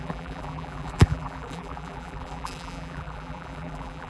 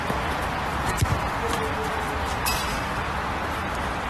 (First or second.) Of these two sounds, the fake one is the first